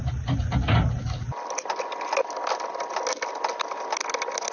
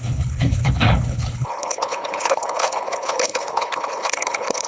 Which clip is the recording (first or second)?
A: first